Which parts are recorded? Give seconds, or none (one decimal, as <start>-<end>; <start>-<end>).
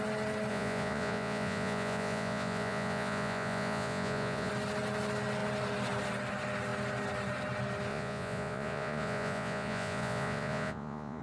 0.0-0.5; 4.5-7.9